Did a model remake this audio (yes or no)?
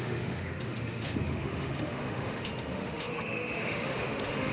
yes